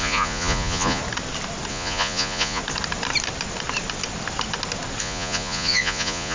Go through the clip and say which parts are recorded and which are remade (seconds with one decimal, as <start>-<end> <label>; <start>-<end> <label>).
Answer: 0.0-1.0 remade; 1.0-1.7 recorded; 1.7-2.6 remade; 2.6-5.0 recorded; 5.0-6.3 remade